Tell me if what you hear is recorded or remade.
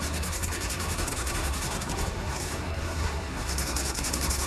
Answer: remade